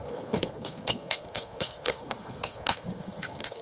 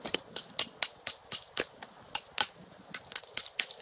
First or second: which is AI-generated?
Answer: first